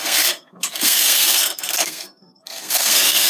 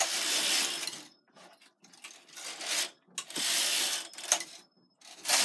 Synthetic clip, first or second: first